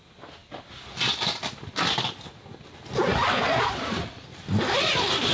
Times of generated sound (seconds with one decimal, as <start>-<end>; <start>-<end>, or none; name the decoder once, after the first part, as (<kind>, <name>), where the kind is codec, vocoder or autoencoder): 3.1-4.8 (vocoder, BigVGAN v2)

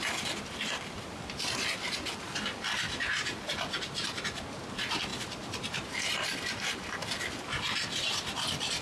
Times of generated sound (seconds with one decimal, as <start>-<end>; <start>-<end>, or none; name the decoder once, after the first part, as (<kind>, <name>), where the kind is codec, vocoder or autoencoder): 0.0-5.1 (vocoder, BigVGAN v2); 5.9-7.0; 7.9-8.8

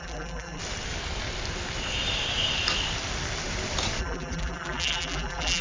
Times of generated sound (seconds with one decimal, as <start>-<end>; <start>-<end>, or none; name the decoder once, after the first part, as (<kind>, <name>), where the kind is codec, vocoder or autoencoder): 0.0-0.6 (vocoder, BigVGAN v2); 4.0-5.6

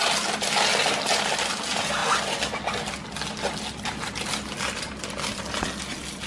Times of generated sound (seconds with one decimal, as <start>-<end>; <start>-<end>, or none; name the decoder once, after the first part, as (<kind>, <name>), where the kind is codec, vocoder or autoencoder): none

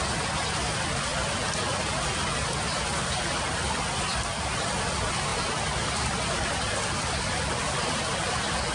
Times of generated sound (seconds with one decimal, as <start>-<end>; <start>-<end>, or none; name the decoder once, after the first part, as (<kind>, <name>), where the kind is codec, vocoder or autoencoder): none

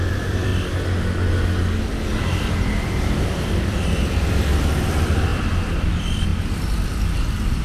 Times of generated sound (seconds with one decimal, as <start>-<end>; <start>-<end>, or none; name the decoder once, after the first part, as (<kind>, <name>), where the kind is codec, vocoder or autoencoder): 0.0-0.5 (vocoder, BigVGAN v2); 2.1-5.3; 5.8-6.3